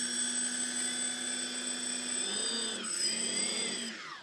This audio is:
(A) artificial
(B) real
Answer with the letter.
B